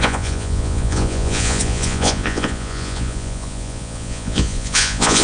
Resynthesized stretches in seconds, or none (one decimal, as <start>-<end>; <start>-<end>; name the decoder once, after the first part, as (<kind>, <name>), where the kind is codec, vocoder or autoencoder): 0.0-5.2 (vocoder, Vocos)